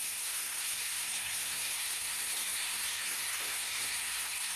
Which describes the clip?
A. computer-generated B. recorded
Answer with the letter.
A